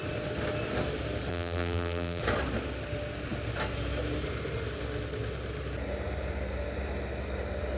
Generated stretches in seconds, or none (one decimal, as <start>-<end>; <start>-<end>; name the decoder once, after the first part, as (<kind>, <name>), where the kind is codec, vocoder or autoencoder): 1.3-2.2 (vocoder, BigVGAN v2)